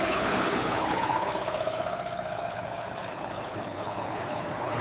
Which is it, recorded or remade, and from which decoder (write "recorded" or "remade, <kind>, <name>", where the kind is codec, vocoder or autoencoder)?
remade, codec, HILCodec